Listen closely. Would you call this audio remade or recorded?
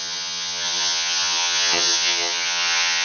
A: remade